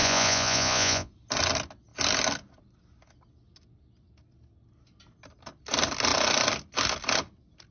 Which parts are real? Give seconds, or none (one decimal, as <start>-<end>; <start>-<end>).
1.1-7.7